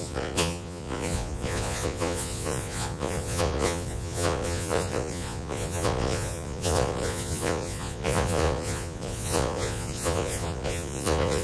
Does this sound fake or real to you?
fake